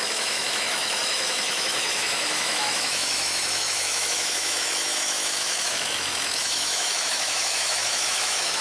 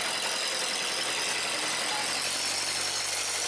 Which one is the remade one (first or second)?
first